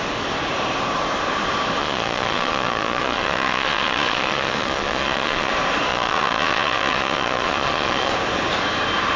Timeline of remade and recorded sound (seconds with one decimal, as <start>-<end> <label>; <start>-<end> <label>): 0.0-1.8 recorded; 1.8-5.5 remade; 5.5-5.9 recorded; 5.9-8.1 remade; 8.1-9.2 recorded